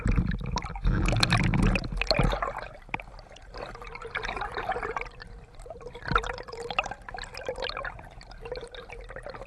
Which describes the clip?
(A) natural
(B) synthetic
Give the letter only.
A